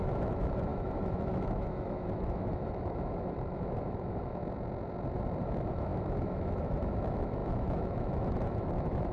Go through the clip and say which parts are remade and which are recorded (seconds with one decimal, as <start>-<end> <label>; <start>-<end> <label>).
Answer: 0.0-4.4 remade; 4.4-5.4 recorded; 5.4-9.1 remade